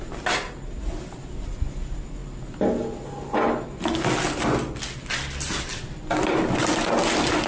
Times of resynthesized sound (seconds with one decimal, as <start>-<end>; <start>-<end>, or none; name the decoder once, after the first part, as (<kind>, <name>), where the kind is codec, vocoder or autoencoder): none